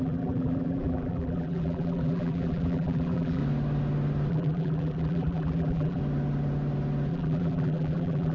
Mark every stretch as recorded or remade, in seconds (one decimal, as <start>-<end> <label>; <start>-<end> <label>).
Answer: 0.0-3.4 remade; 3.4-4.3 recorded; 4.3-6.0 remade; 6.0-7.1 recorded; 7.1-8.3 remade